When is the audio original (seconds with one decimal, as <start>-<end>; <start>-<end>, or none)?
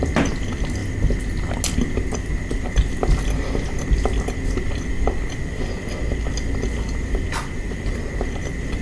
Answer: 0.0-8.8